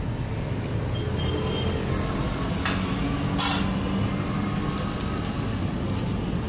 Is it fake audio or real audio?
real